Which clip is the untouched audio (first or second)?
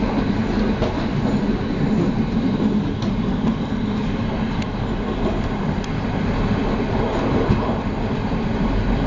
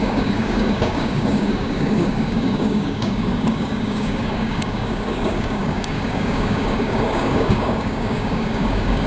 first